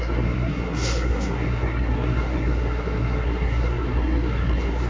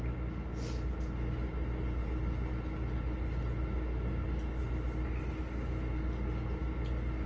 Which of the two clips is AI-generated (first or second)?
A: first